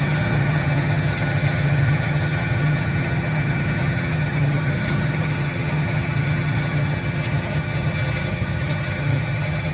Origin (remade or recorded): remade